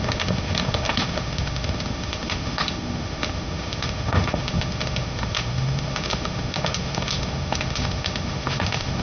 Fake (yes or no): yes